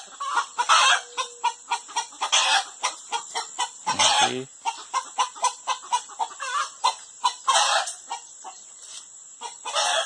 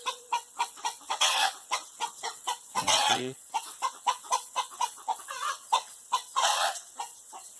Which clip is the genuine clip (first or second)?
first